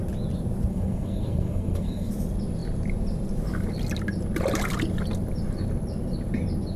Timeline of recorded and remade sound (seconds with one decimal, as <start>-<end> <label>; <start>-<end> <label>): 0.0-0.7 recorded; 0.7-2.1 remade; 2.1-6.8 recorded